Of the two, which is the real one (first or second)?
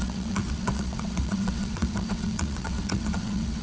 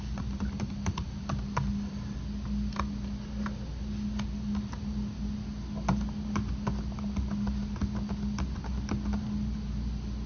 second